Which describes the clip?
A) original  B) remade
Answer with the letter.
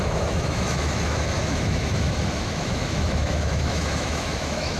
B